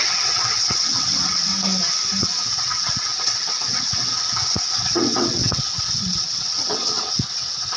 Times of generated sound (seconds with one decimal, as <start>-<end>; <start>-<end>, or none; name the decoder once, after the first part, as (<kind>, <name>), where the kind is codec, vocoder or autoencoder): 0.0-1.5 (vocoder, WaveNeXt); 2.2-7.8

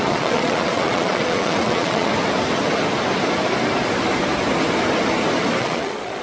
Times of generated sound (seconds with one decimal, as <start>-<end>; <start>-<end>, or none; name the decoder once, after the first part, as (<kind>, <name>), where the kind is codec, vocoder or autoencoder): 0.0-2.1 (vocoder, Vocos); 5.6-6.2